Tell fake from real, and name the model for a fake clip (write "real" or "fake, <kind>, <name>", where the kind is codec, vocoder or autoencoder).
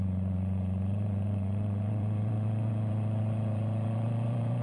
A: fake, vocoder, Vocos